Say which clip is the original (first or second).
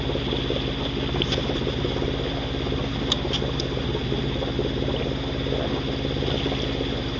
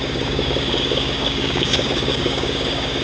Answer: first